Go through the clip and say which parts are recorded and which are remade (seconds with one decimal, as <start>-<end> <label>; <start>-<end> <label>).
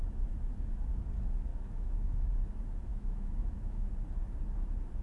0.0-1.5 recorded; 1.5-2.3 remade; 2.3-2.9 recorded; 2.9-3.9 remade; 3.9-5.0 recorded